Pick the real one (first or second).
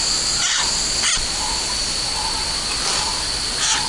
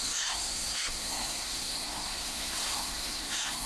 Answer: first